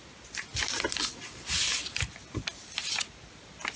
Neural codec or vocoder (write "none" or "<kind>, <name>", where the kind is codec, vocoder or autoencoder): none